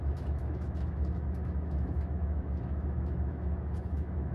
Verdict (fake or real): fake